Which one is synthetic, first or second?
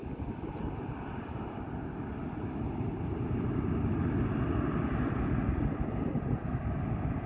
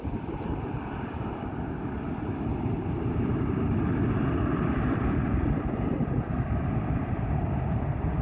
second